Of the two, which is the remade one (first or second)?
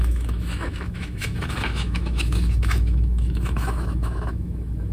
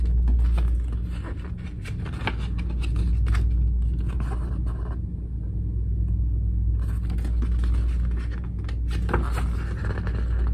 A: first